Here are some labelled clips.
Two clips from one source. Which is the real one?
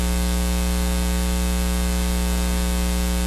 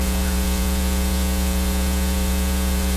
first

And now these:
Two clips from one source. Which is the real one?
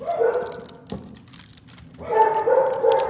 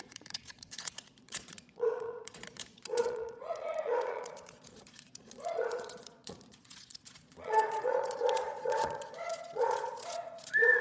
first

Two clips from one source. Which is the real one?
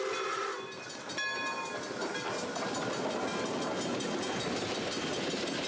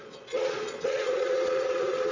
first